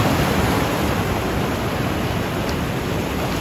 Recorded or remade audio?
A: recorded